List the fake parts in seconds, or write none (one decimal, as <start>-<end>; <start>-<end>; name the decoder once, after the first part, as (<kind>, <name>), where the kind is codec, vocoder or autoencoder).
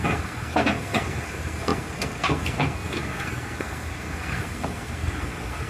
0.0-5.7 (codec, SNAC)